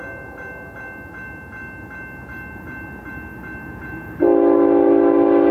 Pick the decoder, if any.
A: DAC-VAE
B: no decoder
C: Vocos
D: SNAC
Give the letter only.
B